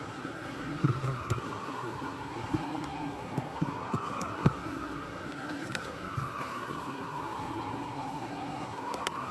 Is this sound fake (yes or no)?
yes